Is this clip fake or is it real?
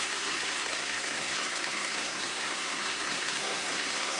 fake